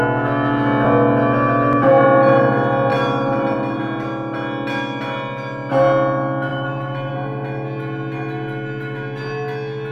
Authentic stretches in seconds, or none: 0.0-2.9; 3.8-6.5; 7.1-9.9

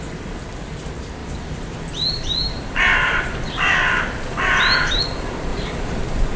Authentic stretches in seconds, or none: 0.0-1.2; 5.0-5.5; 6.0-6.4

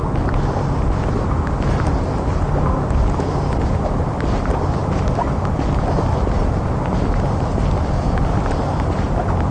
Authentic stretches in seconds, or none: 0.0-9.5

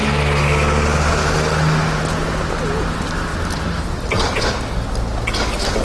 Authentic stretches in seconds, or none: 0.0-3.3; 4.4-5.8

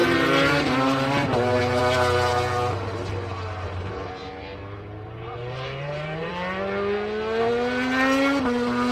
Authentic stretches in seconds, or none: 1.8-4.2; 6.3-8.9

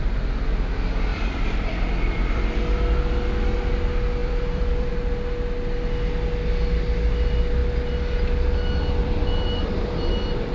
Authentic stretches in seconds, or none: 0.0-1.1; 2.4-4.2; 4.9-9.0; 10.1-10.5

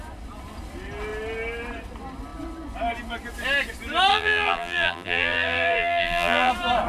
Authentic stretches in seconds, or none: 0.0-4.1; 6.5-6.9

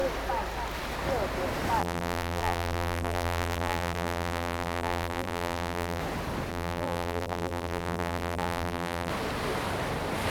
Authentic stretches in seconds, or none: 0.0-1.8; 6.0-6.5; 9.1-10.3